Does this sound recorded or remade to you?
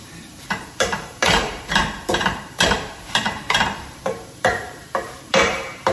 remade